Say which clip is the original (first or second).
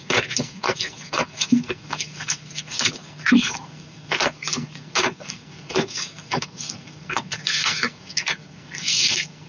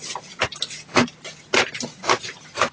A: second